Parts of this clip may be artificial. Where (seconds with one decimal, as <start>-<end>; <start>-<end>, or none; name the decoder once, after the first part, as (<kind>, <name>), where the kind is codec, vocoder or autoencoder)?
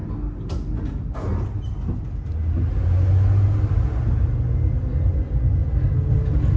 none